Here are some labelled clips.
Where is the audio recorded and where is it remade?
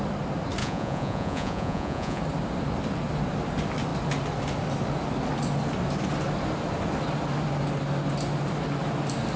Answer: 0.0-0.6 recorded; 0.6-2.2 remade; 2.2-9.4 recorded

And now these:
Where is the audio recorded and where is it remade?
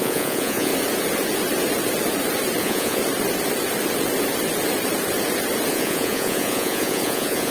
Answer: 0.0-0.7 remade; 0.7-2.6 recorded; 2.6-3.0 remade; 3.0-5.7 recorded; 5.7-7.5 remade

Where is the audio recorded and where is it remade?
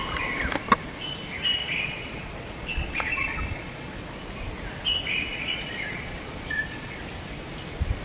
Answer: 0.0-1.6 recorded; 1.6-4.0 remade; 4.0-5.3 recorded; 5.3-7.0 remade; 7.0-8.0 recorded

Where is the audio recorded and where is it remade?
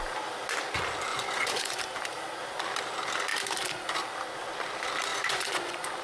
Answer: 0.0-1.1 recorded; 1.1-1.8 remade; 1.8-5.1 recorded; 5.1-6.0 remade